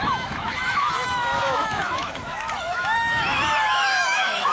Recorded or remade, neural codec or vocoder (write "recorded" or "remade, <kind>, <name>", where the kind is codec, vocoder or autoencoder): remade, autoencoder, DAC-VAE